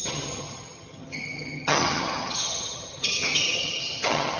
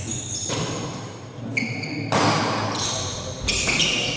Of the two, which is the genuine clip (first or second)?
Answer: second